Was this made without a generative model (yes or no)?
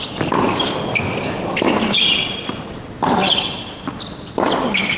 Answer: yes